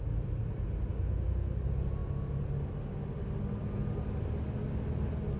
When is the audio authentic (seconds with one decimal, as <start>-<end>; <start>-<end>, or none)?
0.0-5.4